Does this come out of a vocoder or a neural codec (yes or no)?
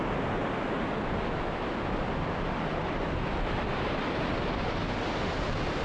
no